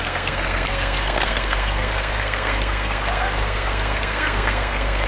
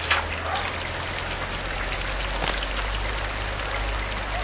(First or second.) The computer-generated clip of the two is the first